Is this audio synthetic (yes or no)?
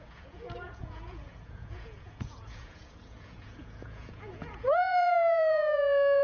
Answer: yes